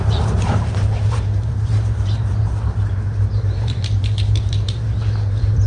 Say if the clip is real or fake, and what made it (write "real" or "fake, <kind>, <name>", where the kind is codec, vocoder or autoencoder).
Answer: fake, vocoder, BigVGAN v2